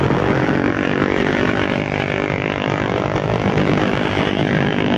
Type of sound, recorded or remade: remade